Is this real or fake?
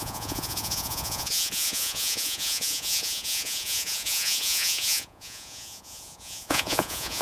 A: fake